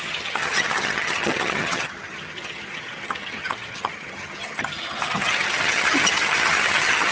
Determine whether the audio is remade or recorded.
remade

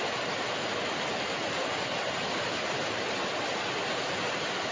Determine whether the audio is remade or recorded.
recorded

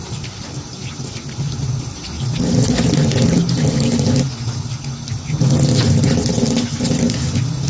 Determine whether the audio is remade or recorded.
recorded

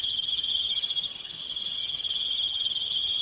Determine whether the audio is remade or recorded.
remade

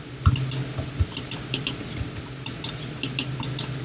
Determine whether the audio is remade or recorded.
recorded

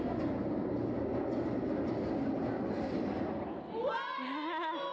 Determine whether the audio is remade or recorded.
recorded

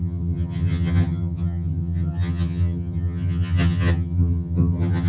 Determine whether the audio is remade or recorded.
remade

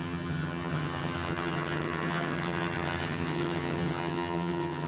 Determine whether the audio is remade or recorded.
remade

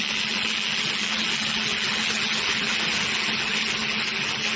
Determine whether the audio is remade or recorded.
recorded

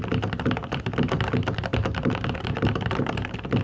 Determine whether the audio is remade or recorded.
recorded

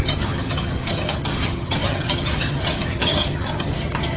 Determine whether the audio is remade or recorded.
remade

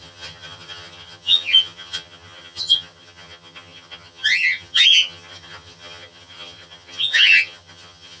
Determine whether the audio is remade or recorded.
remade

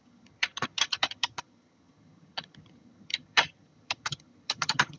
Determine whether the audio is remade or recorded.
remade